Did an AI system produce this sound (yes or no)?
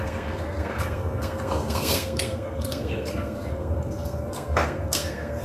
yes